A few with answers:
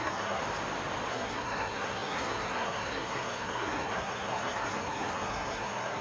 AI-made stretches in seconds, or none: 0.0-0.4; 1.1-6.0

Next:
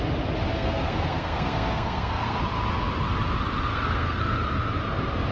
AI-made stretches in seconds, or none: 0.6-2.4; 3.7-4.2

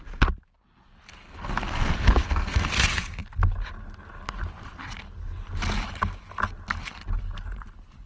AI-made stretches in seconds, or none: 1.2-2.7